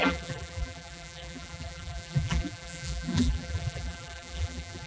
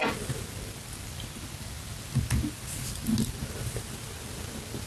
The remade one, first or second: first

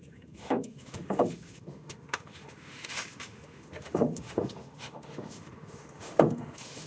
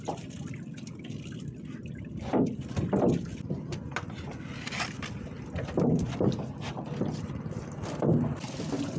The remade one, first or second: first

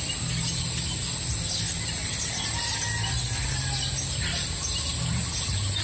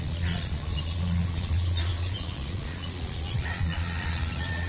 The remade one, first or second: second